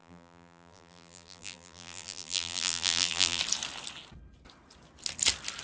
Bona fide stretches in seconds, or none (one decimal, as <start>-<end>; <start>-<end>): 3.4-5.6